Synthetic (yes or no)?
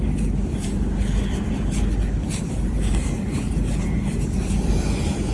no